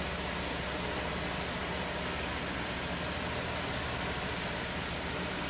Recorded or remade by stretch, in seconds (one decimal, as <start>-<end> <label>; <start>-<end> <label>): 0.0-5.5 recorded